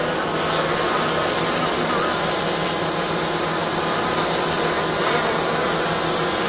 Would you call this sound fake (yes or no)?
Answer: no